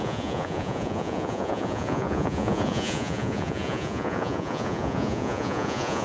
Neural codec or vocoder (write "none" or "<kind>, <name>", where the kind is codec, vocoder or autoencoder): vocoder, Vocos